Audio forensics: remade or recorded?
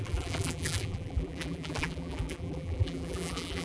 remade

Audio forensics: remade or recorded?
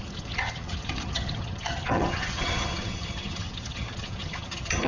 remade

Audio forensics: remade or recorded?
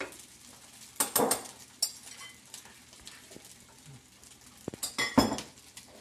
recorded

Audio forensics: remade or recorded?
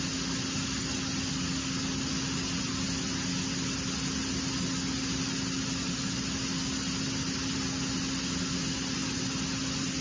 recorded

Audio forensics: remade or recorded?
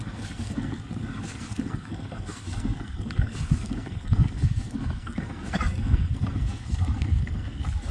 remade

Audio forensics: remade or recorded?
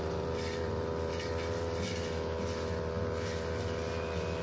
recorded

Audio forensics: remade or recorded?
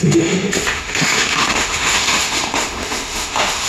remade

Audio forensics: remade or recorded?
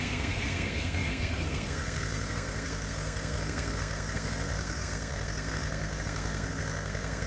remade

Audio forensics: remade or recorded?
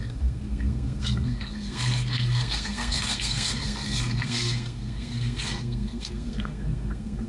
remade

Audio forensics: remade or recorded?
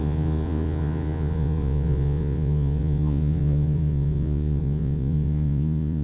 remade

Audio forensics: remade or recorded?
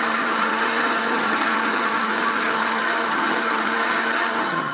remade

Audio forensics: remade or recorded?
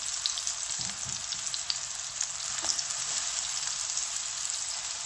recorded